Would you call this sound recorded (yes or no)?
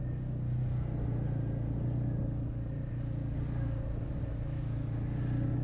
yes